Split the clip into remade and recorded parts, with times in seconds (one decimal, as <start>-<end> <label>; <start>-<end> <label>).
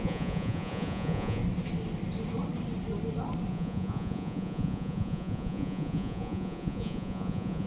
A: 0.0-1.4 remade; 1.4-3.5 recorded; 3.5-7.7 remade